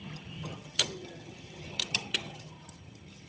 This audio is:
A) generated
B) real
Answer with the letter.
A